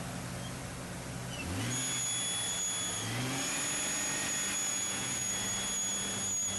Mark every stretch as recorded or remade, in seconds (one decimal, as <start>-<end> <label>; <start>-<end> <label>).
0.0-4.7 recorded; 4.7-5.3 remade; 5.3-6.6 recorded